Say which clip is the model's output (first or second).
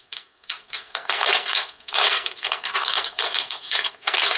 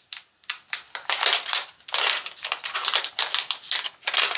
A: first